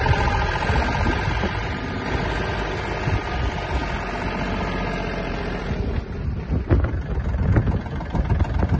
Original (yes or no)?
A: yes